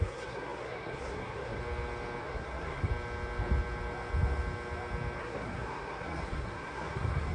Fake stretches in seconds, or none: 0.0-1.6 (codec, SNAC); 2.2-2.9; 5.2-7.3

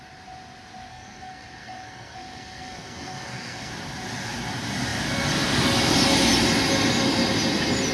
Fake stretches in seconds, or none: 0.9-3.7 (codec, SNAC)

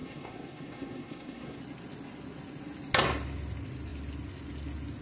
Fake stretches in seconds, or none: 0.0-1.6 (codec, SNAC)

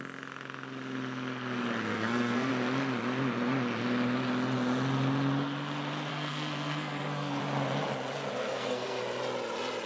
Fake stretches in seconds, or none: 1.9-2.5 (codec, SNAC); 6.1-7.4; 8.4-9.0

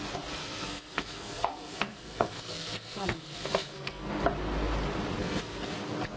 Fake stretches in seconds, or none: 0.4-4.1 (codec, SNAC); 5.2-5.7

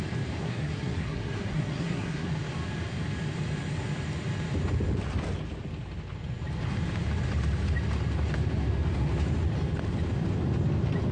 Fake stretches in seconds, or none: 0.4-2.3 (codec, SNAC)

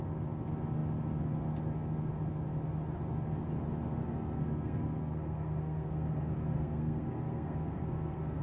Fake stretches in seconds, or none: 4.0-8.4 (codec, SNAC)